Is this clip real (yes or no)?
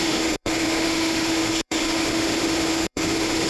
no